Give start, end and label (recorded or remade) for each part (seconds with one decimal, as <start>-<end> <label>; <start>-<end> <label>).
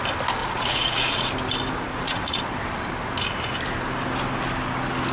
0.0-0.4 recorded; 0.4-1.3 remade; 1.3-1.9 recorded; 1.9-2.4 remade; 2.4-5.1 recorded